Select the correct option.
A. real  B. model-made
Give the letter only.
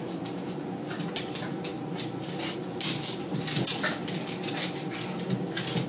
A